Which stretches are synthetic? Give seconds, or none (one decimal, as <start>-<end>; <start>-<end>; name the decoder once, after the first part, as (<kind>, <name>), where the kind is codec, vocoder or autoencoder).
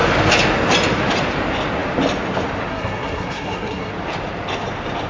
2.7-3.9 (codec, SNAC)